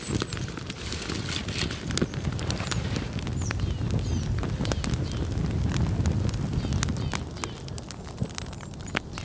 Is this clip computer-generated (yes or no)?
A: no